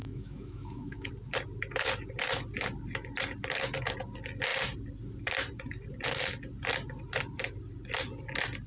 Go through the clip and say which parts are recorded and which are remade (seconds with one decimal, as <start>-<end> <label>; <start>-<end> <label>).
0.0-1.1 remade; 1.1-8.7 recorded